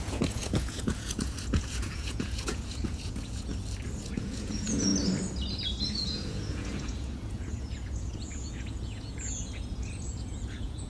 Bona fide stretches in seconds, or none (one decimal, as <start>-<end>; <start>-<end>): 3.5-4.1; 4.9-5.8